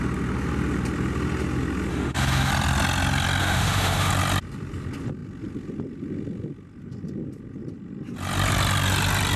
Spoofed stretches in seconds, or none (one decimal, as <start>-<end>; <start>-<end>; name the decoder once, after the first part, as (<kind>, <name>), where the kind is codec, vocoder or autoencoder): 1.9-2.5 (autoencoder, DAC-VAE); 3.4-4.1